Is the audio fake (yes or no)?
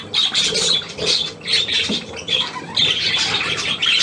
no